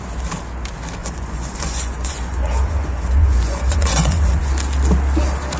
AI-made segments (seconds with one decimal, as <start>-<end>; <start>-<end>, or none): 1.0-4.4